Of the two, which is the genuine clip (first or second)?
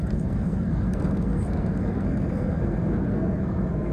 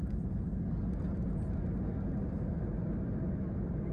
second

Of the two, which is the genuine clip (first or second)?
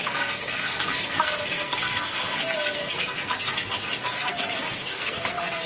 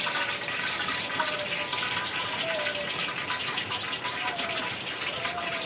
second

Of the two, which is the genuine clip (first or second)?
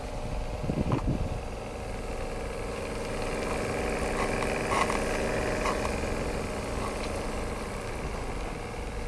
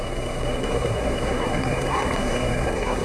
first